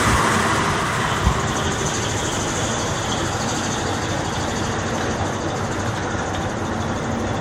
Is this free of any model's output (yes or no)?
yes